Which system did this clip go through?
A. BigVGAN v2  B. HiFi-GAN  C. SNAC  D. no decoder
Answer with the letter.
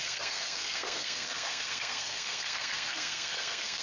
C